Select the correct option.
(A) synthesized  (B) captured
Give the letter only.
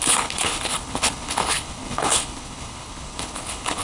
A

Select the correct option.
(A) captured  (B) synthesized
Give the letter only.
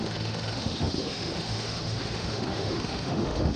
B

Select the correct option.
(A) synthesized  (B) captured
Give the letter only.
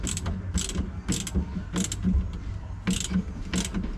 B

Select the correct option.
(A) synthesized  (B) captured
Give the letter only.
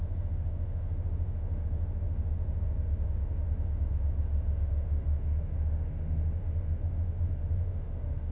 A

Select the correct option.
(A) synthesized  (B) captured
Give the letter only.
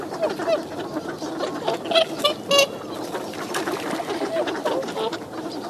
B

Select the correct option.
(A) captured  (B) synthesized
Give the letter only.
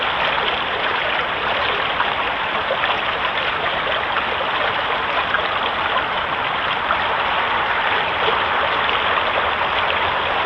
A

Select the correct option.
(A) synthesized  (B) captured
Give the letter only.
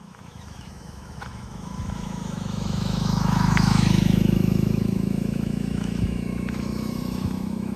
A